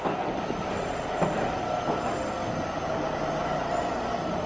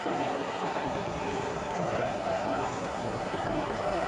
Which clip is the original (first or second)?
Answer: first